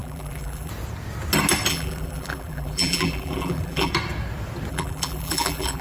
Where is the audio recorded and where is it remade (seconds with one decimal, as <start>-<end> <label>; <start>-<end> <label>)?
0.0-0.7 remade; 0.7-1.7 recorded; 1.7-3.9 remade; 3.9-4.7 recorded; 4.7-5.8 remade